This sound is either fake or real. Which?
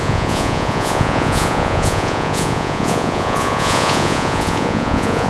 fake